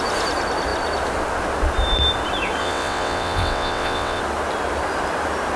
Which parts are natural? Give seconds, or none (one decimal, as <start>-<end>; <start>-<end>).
0.0-2.6; 4.2-5.6